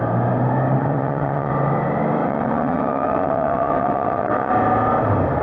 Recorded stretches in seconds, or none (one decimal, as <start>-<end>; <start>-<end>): 0.0-0.8; 1.5-2.2; 4.5-5.4